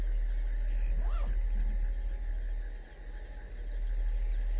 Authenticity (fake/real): real